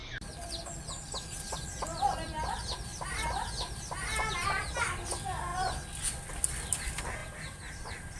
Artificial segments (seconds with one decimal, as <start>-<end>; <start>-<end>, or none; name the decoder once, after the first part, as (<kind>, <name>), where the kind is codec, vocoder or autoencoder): 2.9-3.8 (vocoder, BigVGAN v2); 7.2-8.2